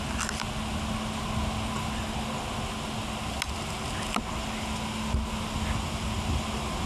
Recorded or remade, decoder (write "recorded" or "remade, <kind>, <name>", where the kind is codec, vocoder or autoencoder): recorded